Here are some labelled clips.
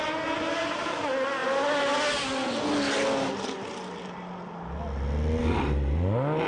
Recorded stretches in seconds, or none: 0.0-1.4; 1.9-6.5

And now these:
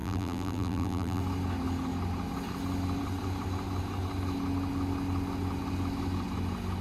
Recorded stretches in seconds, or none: 1.2-6.8

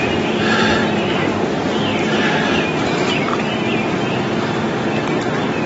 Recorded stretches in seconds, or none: 0.0-5.7

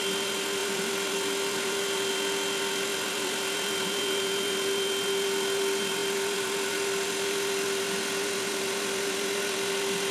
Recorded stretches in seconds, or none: 0.0-0.6; 2.1-2.9; 4.0-10.1

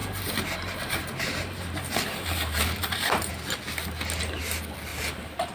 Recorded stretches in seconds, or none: 3.3-4.9

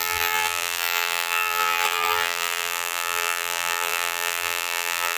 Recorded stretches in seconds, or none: none